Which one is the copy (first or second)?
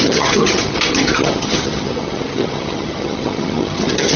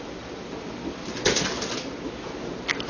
first